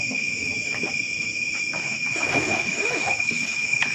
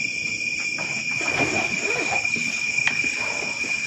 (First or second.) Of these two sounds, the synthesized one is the first